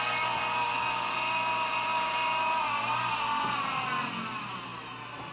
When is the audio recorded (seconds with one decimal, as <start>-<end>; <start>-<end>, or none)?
0.0-5.3